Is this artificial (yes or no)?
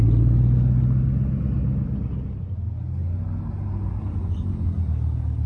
no